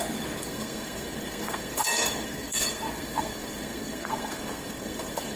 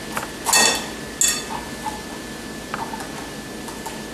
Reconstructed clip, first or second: first